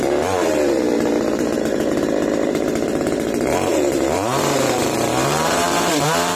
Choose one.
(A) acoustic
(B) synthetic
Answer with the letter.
B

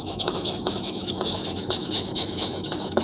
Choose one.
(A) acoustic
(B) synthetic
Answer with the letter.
B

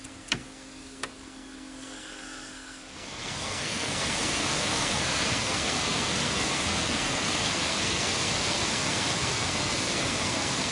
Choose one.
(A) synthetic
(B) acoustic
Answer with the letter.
A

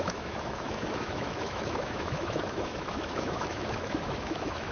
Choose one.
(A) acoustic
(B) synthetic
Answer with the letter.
B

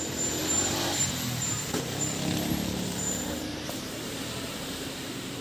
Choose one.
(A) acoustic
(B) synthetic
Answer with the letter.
B